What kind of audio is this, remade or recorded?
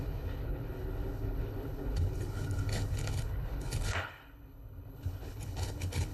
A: remade